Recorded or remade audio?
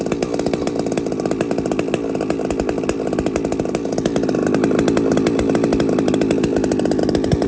recorded